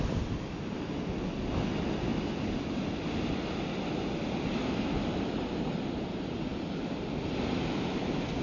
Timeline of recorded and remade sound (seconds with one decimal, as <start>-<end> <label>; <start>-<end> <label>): 0.0-8.4 recorded

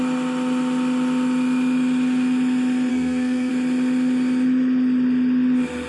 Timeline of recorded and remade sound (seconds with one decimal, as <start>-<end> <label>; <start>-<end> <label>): 0.0-2.9 recorded; 2.9-3.5 remade; 3.5-5.9 recorded

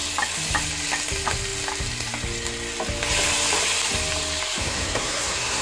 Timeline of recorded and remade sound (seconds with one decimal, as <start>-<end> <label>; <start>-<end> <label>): 0.0-4.6 recorded; 4.6-5.6 remade